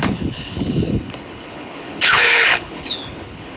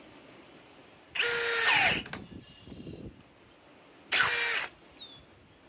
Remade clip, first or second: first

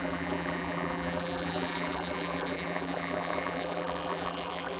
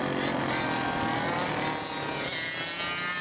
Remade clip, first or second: first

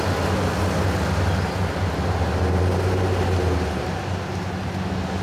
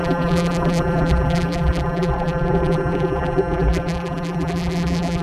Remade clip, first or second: second